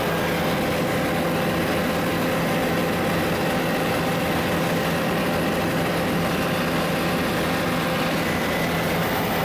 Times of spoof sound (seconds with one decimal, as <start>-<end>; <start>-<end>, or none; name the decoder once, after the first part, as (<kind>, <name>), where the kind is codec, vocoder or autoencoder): none